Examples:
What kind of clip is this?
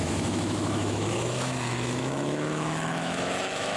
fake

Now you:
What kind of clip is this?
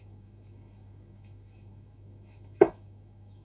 fake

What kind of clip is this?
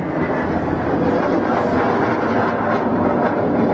real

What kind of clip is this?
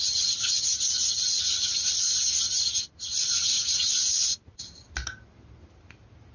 real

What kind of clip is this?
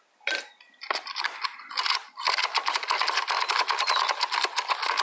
real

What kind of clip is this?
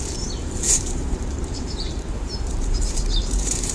fake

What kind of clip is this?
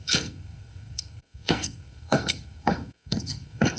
fake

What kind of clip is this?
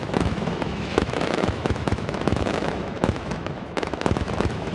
fake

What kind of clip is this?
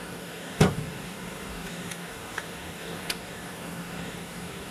fake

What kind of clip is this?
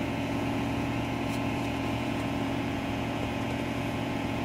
fake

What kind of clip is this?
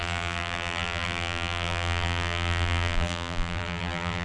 fake